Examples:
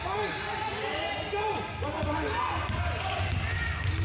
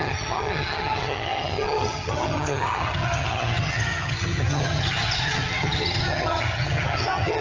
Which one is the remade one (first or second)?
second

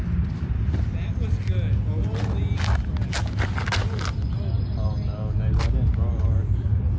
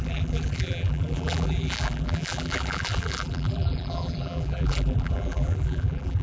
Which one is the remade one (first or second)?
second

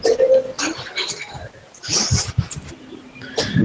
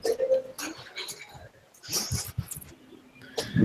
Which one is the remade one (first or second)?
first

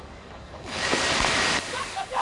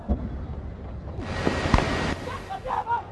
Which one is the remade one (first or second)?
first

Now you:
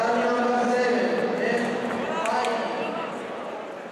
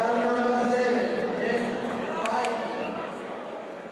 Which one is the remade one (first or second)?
second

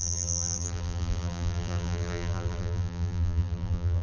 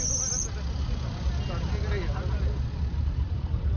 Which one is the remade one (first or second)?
first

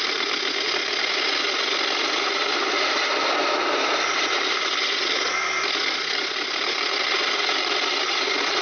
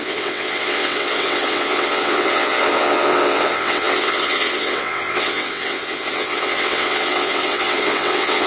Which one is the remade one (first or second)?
second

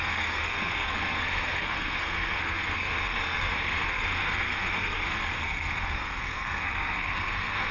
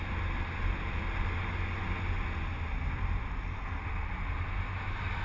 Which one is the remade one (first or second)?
first